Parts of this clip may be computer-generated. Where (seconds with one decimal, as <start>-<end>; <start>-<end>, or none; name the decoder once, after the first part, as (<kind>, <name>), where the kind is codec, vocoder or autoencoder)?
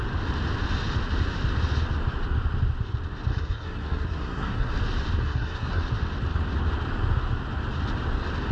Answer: 3.3-4.7 (codec, SNAC); 5.2-5.8